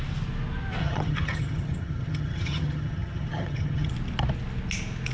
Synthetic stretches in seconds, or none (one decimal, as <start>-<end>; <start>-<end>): 0.8-3.9